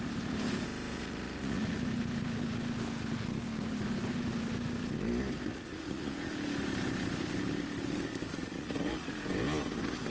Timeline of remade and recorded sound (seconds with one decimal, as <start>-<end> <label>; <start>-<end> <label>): 0.0-0.9 recorded; 0.9-1.8 remade; 1.8-5.5 recorded; 5.5-6.3 remade; 6.3-8.3 recorded; 8.3-9.1 remade; 9.1-10.1 recorded